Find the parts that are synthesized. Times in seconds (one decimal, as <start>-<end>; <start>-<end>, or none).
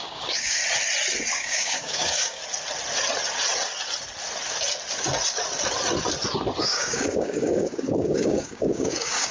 0.0-0.6; 1.3-2.4; 6.6-9.3